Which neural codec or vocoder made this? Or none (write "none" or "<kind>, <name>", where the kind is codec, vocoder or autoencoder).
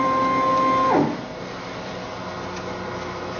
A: none